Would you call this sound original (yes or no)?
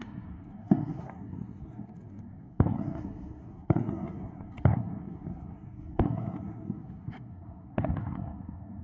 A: no